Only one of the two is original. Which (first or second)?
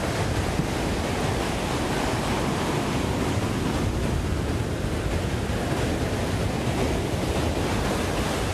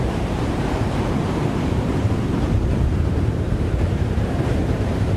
first